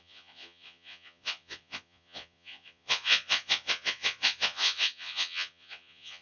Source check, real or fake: fake